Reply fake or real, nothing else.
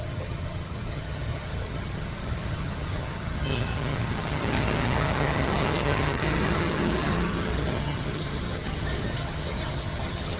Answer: fake